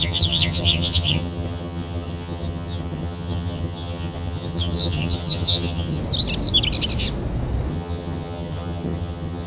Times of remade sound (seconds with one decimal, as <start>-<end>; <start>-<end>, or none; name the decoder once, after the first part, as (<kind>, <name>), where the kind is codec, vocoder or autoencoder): 0.0-6.0 (vocoder, HiFi-GAN); 7.7-9.5